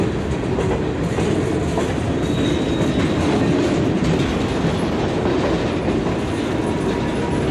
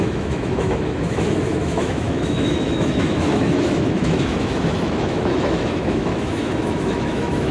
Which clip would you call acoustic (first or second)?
first